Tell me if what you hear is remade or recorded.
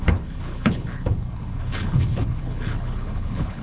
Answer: remade